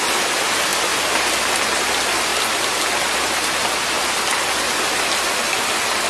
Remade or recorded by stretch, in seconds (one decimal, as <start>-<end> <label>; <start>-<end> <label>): 0.0-6.1 recorded